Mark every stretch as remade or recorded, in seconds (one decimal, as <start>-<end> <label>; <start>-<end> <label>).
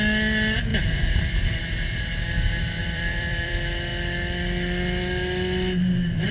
0.0-0.7 recorded; 0.7-1.6 remade; 1.6-2.8 recorded; 2.8-3.5 remade; 3.5-6.3 recorded